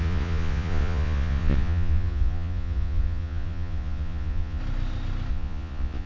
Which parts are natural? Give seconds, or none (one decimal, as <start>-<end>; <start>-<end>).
4.6-5.3